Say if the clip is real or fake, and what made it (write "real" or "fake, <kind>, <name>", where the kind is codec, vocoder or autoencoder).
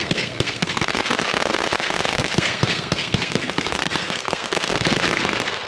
fake, codec, SNAC